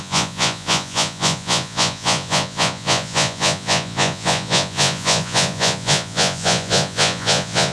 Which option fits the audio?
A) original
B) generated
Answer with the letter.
B